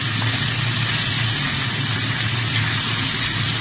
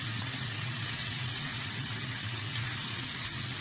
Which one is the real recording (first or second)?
first